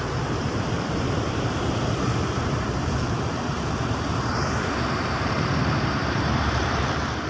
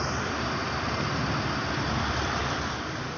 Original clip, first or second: second